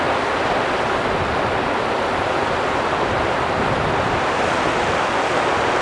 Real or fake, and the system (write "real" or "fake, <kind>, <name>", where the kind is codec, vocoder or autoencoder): real